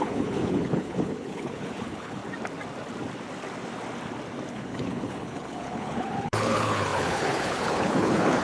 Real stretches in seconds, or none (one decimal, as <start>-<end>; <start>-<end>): 2.2-4.5